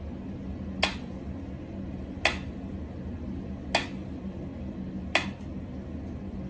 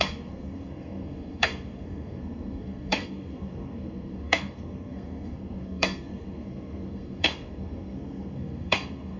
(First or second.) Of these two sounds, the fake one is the second